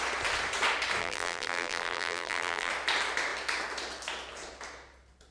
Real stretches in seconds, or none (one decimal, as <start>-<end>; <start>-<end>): 0.0-1.0; 2.7-5.3